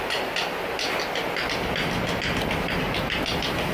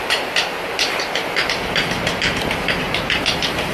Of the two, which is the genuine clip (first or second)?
first